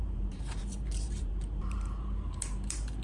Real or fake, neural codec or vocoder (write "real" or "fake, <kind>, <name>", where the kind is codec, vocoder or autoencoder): fake, vocoder, BigVGAN v2